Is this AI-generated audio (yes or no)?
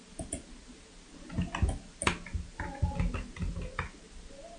no